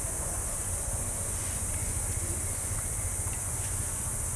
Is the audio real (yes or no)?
no